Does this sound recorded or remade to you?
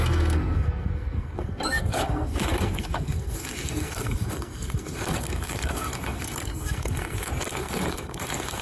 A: remade